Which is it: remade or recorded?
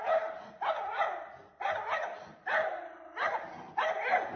recorded